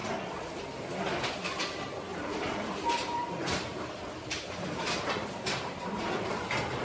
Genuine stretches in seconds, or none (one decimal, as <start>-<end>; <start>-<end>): 0.0-2.1; 6.1-6.8